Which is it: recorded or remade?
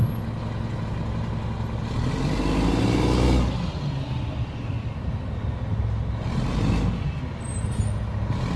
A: recorded